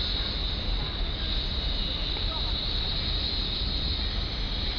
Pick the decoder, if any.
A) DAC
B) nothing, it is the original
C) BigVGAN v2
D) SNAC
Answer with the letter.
B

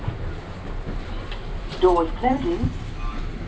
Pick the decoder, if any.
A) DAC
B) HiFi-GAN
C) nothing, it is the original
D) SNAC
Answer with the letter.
C